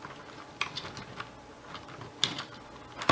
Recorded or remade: recorded